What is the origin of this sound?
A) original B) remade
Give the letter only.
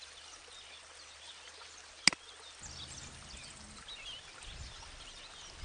A